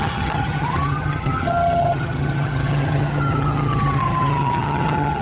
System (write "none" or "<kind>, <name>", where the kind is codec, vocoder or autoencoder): vocoder, HiFi-GAN